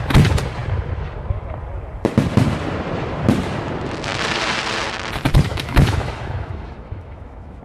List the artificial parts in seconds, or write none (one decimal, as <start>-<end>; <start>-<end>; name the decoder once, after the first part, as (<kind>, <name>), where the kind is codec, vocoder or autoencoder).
5.5-7.6 (autoencoder, DAC-VAE)